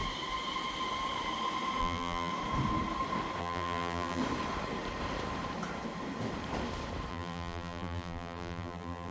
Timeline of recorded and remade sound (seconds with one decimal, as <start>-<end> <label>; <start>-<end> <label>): 0.0-1.8 recorded; 1.8-2.3 remade; 2.3-3.4 recorded; 3.4-4.2 remade; 4.2-7.1 recorded; 7.1-9.1 remade